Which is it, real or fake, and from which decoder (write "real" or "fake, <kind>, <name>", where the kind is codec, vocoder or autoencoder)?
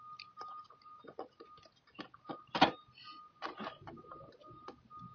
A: real